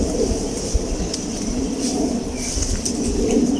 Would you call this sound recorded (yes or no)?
yes